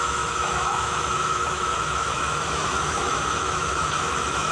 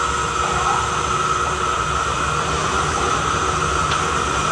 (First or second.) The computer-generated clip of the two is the first